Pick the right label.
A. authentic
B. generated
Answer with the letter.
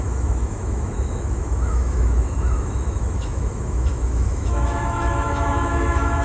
B